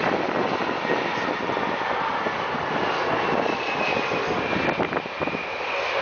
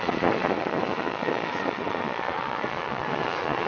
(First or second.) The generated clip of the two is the second